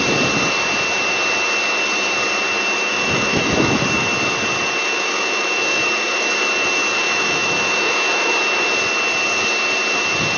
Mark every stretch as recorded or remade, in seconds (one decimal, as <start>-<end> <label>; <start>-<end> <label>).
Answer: 0.0-2.8 recorded; 2.8-3.8 remade; 3.8-4.8 recorded; 4.8-5.8 remade; 5.8-7.0 recorded; 7.0-8.3 remade; 8.3-10.4 recorded